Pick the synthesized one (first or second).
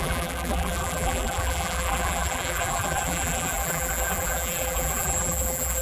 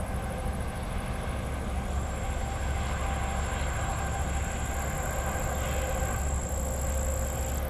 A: first